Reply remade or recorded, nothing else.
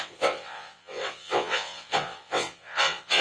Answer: remade